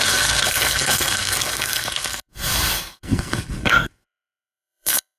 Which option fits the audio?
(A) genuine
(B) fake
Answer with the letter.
B